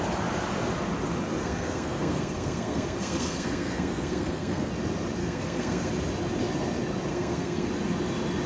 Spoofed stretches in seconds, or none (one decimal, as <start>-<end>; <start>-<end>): 1.4-4.7; 5.2-5.9; 7.1-7.7